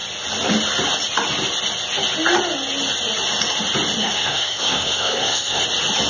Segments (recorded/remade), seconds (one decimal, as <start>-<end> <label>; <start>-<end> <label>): 0.0-4.0 recorded; 4.0-5.6 remade; 5.6-6.1 recorded